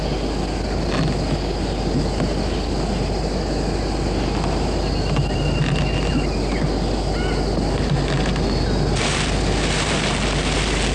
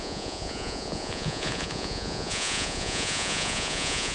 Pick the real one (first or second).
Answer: first